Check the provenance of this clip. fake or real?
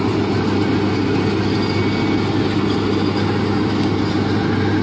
real